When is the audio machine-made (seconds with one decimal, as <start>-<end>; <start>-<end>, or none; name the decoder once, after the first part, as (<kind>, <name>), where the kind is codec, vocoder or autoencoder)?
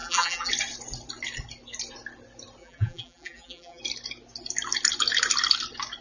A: 0.0-0.5 (vocoder, BigVGAN v2); 2.6-3.8